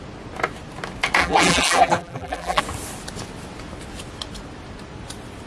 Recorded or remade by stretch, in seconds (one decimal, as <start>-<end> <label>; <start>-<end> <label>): 0.0-1.2 recorded; 1.2-2.6 remade; 2.6-5.5 recorded